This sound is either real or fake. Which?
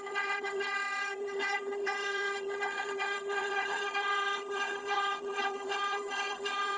fake